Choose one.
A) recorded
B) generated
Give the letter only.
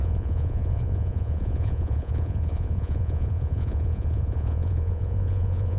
B